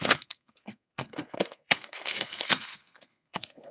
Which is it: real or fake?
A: fake